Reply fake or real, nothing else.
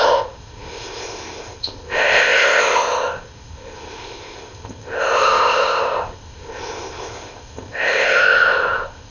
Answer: fake